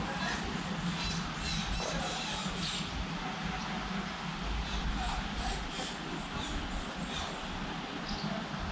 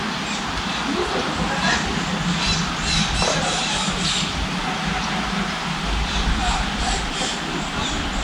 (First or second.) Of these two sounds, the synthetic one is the second